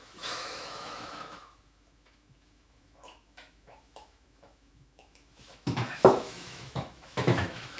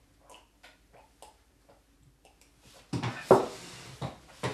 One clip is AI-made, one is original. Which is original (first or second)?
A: second